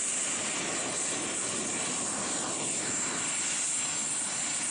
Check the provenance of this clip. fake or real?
real